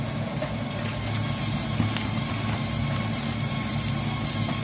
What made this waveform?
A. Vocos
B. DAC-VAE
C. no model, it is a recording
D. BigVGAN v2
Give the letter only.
C